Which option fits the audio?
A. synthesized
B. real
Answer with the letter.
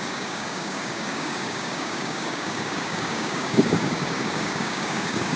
A